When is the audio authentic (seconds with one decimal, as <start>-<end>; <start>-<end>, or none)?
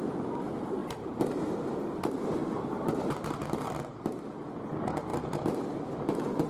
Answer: 0.0-0.8; 4.2-5.1; 5.7-6.5